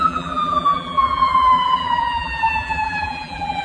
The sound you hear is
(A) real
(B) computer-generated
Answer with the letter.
B